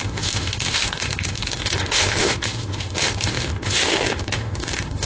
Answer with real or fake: fake